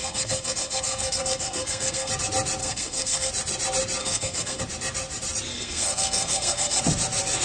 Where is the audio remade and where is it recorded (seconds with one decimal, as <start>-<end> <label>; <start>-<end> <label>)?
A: 0.0-2.1 remade; 2.1-2.6 recorded; 2.6-3.3 remade; 3.3-4.0 recorded; 4.0-4.6 remade; 4.6-5.5 recorded; 5.5-6.8 remade; 6.8-7.4 recorded